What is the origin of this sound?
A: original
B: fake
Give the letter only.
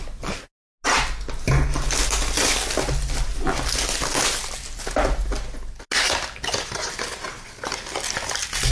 A